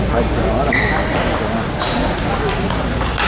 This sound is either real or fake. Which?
real